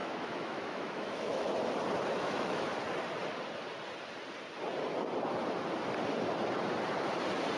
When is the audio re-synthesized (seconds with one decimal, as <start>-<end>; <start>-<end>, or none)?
0.0-1.5; 2.2-2.7